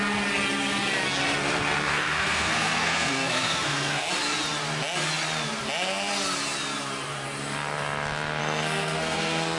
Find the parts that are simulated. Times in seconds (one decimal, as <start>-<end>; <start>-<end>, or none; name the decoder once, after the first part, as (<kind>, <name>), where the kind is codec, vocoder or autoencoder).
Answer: 1.9-4.1 (codec, SNAC); 8.4-9.6